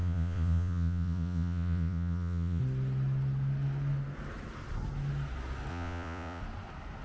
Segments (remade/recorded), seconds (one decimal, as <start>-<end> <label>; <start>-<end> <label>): 0.0-2.6 remade; 2.6-5.7 recorded; 5.7-6.4 remade; 6.4-7.0 recorded